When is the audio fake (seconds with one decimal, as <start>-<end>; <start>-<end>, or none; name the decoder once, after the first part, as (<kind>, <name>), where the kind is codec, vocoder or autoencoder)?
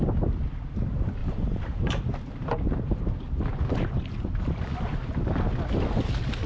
1.2-1.8 (vocoder, BigVGAN v2); 2.2-4.6